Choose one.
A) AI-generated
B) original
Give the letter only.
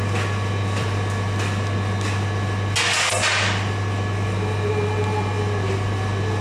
B